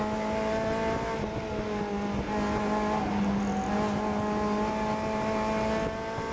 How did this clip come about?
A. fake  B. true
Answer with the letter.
B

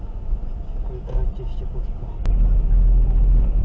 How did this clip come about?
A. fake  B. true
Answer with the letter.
B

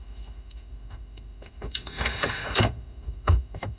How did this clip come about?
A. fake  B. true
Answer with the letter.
A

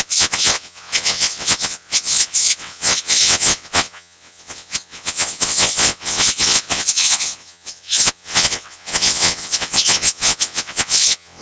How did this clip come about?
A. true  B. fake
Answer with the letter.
B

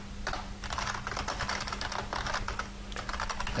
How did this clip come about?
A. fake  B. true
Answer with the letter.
B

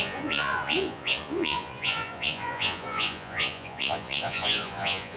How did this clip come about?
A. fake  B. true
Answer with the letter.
A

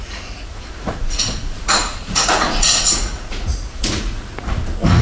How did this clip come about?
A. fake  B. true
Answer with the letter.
A